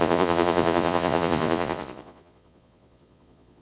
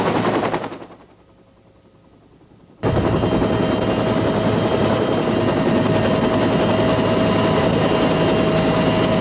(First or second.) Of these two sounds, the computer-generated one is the first